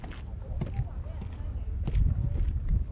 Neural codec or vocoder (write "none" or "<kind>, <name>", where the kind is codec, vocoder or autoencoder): none